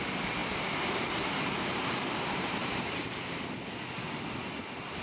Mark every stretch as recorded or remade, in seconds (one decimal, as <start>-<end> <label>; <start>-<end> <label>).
0.0-0.4 recorded; 0.4-3.4 remade; 3.4-5.0 recorded